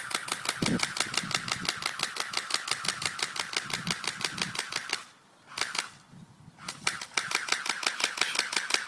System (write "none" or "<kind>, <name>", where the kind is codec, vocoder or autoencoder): vocoder, BigVGAN v2